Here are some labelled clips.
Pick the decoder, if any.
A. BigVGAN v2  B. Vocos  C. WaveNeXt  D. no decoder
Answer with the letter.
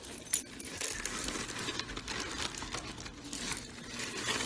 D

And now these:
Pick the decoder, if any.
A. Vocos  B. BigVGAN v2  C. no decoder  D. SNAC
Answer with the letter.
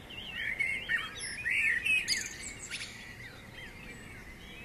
C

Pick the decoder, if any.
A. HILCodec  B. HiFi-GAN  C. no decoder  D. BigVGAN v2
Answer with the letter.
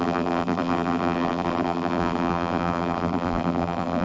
D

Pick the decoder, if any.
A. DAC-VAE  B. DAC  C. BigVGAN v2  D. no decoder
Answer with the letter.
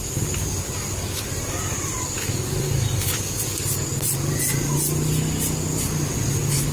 D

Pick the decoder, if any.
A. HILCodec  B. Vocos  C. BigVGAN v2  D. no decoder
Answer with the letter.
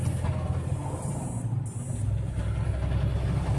D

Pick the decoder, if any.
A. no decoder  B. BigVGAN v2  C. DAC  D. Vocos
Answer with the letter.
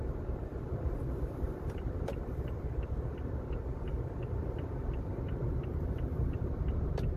B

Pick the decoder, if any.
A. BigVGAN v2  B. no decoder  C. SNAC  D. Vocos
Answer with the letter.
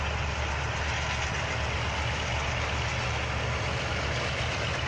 B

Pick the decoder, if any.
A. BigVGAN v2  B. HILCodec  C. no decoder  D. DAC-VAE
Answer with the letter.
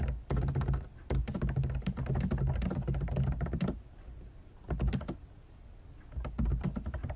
C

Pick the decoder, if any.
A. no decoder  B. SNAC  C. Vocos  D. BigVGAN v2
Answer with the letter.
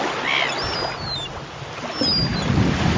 A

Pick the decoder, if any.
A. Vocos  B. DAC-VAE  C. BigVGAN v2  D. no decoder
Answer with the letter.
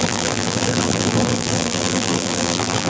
C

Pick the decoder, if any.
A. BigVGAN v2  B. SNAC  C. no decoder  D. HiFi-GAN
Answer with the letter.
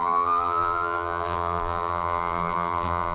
A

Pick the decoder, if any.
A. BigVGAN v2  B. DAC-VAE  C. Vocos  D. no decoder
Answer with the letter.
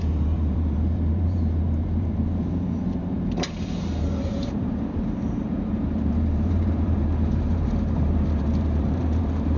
A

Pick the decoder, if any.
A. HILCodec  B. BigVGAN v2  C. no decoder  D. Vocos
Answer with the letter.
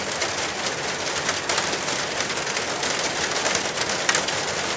C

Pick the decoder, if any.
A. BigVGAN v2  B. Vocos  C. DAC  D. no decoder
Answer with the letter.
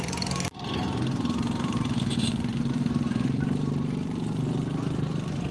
A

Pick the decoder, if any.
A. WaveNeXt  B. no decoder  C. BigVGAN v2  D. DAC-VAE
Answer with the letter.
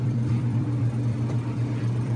C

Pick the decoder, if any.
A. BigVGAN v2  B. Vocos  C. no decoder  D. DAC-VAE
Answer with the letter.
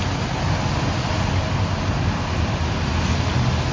C